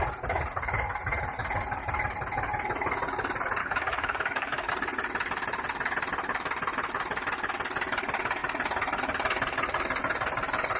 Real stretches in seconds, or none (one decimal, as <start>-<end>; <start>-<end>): 0.0-3.6; 4.7-10.8